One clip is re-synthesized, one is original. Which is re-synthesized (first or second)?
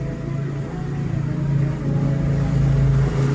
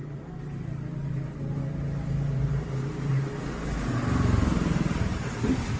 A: second